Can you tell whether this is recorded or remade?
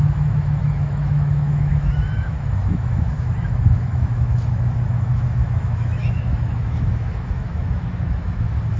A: remade